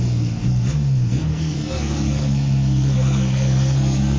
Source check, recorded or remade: remade